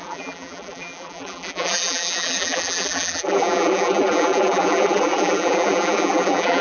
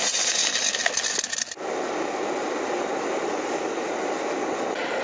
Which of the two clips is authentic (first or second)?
second